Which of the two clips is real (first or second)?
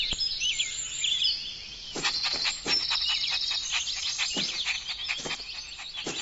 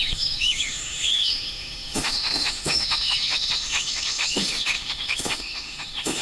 first